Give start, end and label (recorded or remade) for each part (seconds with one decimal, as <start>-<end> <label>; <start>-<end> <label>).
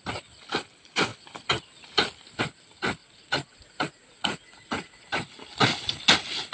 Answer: 0.0-3.0 recorded; 3.0-5.1 remade; 5.1-6.5 recorded